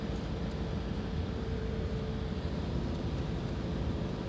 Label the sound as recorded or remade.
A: remade